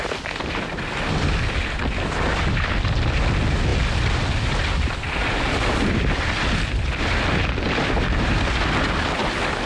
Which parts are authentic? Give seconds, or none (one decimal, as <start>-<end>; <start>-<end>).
0.0-9.7